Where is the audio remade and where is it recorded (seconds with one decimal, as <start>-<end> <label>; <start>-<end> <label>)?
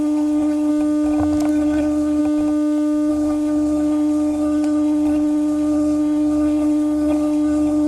0.0-0.7 remade; 0.7-1.5 recorded; 1.5-2.2 remade; 2.2-3.1 recorded; 3.1-7.9 remade